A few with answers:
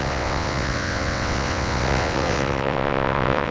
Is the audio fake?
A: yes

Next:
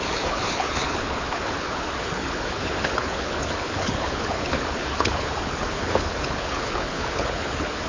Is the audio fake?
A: yes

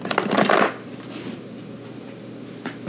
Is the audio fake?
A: no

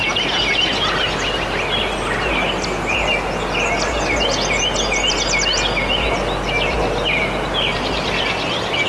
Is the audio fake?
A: no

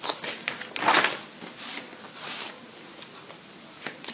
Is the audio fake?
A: no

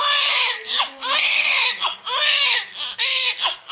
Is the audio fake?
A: yes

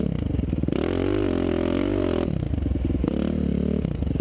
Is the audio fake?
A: no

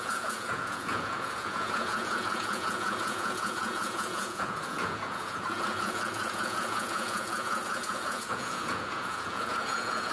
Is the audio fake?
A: yes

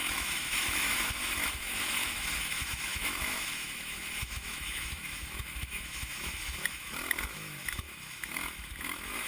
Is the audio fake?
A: yes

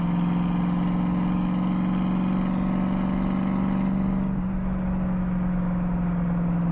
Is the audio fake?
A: no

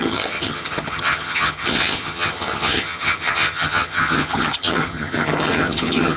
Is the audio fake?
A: yes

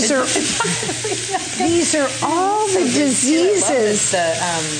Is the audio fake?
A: no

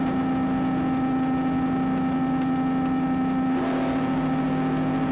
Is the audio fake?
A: no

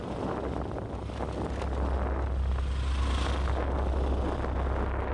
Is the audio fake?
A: no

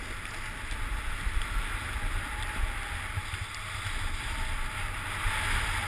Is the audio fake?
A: no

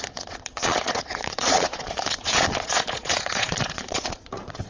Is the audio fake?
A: yes